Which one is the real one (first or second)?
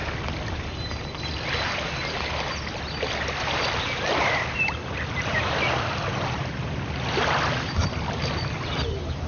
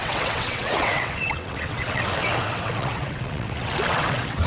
first